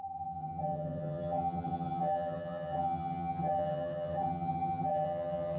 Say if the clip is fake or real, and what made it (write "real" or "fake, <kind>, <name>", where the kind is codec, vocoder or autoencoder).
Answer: fake, vocoder, HiFi-GAN